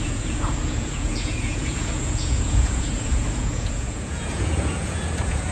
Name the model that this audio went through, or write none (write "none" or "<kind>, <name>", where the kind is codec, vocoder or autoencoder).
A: vocoder, Vocos